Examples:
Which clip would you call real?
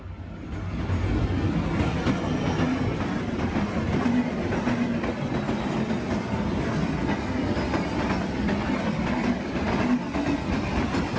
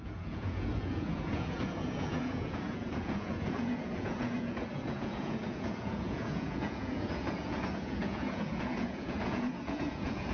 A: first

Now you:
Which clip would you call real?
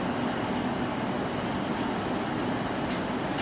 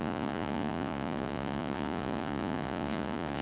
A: first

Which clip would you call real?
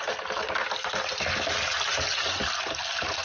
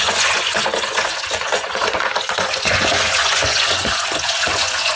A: first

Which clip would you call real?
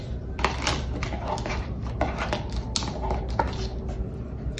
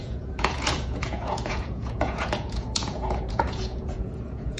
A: first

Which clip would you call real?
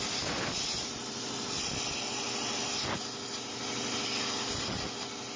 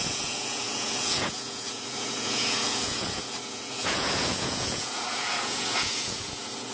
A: first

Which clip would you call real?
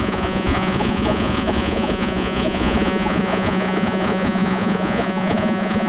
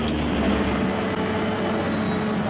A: second